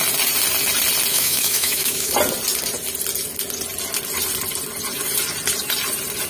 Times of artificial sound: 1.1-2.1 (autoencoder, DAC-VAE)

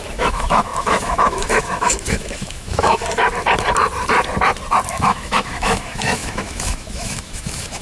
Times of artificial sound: 0.0-3.0 (autoencoder, DAC-VAE); 4.9-7.8

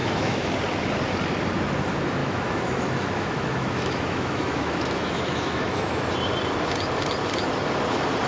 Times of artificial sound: 0.0-0.5 (autoencoder, DAC-VAE); 2.2-6.1

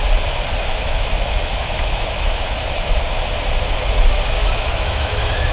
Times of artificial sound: 0.7-2.9 (autoencoder, DAC-VAE); 4.4-5.5